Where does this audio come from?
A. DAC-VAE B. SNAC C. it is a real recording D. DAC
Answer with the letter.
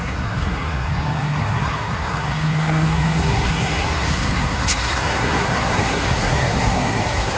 B